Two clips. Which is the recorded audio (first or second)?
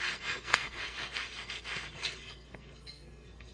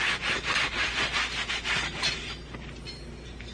second